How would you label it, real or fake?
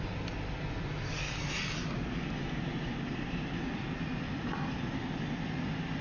real